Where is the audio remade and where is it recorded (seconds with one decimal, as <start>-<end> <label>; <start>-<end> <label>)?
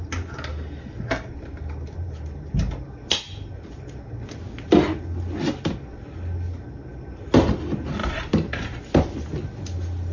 0.0-8.0 recorded; 8.0-8.8 remade; 8.8-10.1 recorded